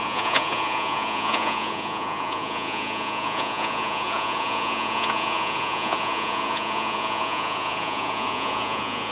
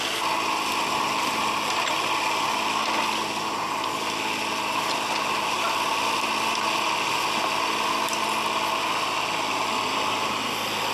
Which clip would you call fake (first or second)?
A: first